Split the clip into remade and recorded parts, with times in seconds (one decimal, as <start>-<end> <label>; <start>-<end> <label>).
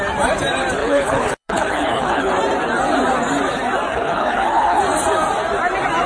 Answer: 0.0-0.8 recorded; 0.8-2.3 remade; 2.3-3.9 recorded; 3.9-4.8 remade; 4.8-6.1 recorded